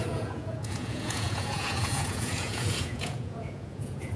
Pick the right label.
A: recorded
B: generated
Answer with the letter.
B